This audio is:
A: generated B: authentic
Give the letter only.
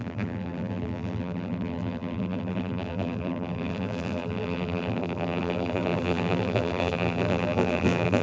A